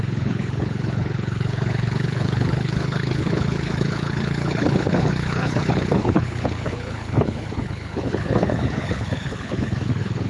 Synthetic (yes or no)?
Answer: yes